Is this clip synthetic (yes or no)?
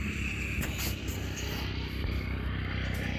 no